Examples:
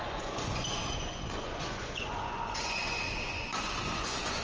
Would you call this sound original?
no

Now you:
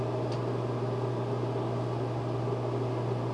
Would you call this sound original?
yes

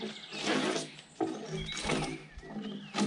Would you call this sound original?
yes